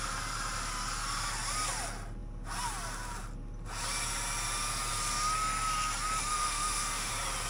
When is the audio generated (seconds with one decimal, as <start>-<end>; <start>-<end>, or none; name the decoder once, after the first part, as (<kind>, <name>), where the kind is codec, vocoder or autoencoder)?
6.3-7.1 (autoencoder, DAC-VAE)